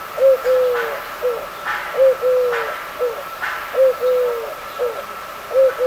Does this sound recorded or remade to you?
recorded